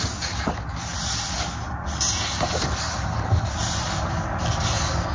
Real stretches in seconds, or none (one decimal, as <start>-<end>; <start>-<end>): 0.0-5.1